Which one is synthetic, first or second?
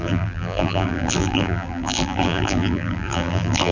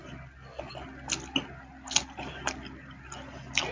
first